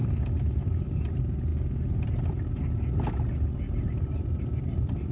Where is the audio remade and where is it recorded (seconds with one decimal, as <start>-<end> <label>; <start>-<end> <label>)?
0.0-5.1 recorded